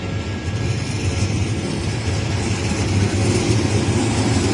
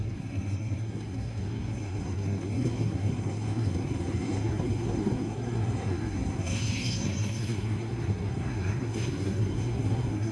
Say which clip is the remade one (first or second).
second